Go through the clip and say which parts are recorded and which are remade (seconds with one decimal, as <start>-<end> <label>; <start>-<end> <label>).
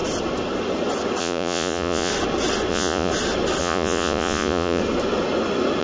0.0-1.2 recorded; 1.2-2.1 remade; 2.1-2.7 recorded; 2.7-3.1 remade; 3.1-3.6 recorded; 3.6-4.8 remade; 4.8-5.8 recorded